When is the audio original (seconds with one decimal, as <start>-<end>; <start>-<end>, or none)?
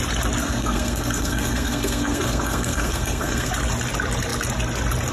0.0-0.4; 3.5-5.1